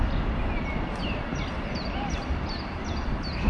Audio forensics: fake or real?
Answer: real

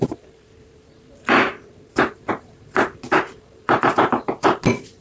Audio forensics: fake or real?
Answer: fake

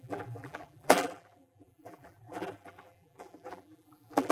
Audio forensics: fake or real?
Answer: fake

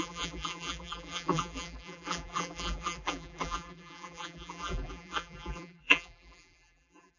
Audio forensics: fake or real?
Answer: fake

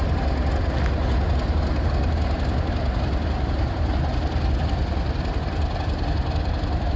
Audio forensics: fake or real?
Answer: real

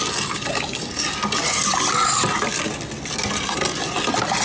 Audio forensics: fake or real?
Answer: real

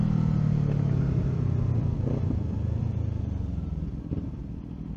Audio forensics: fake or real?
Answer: real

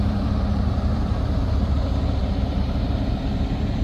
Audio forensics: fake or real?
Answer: fake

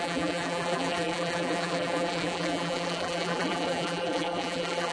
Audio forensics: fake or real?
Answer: fake